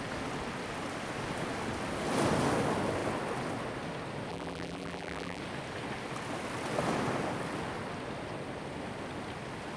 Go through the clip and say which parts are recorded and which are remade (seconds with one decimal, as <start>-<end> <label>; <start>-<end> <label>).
0.0-4.3 recorded; 4.3-5.4 remade; 5.4-9.8 recorded